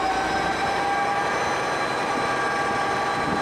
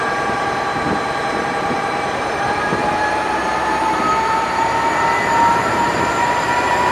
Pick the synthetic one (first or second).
second